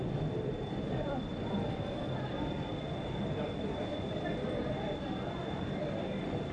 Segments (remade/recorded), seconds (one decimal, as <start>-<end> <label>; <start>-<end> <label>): 0.0-1.3 remade; 1.3-4.7 recorded; 4.7-6.5 remade